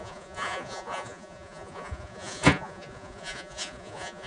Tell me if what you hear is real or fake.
fake